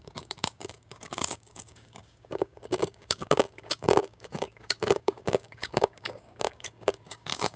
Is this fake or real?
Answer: fake